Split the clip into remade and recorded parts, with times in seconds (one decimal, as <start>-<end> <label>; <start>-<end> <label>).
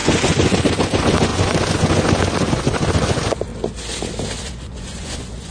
0.0-3.5 remade; 3.5-4.4 recorded; 4.4-5.5 remade